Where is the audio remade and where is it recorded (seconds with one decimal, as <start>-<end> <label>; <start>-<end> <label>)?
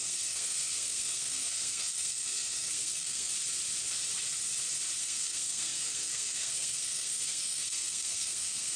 0.0-3.3 remade; 3.3-5.0 recorded; 5.0-8.8 remade